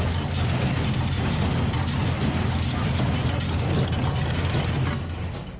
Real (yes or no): yes